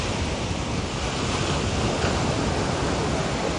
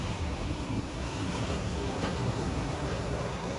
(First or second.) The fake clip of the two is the second